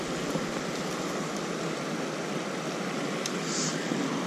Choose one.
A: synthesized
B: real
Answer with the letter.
B